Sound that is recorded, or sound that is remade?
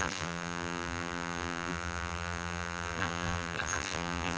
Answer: remade